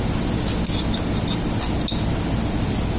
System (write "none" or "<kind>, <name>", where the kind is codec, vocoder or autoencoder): none